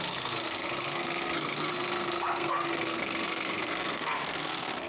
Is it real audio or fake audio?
fake